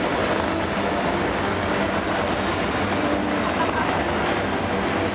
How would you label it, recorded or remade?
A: recorded